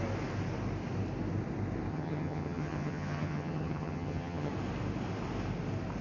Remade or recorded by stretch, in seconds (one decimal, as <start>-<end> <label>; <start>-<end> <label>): 0.0-1.9 recorded; 1.9-4.5 remade; 4.5-6.0 recorded